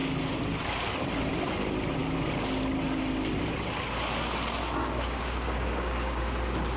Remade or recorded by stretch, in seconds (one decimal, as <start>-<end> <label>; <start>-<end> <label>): 0.0-4.8 recorded; 4.8-6.2 remade; 6.2-6.8 recorded